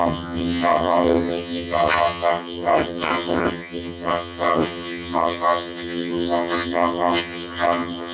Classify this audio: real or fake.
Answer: fake